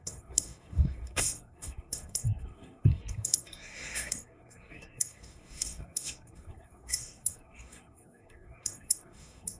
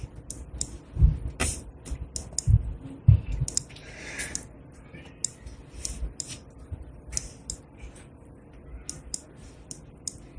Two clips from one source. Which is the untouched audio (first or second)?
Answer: second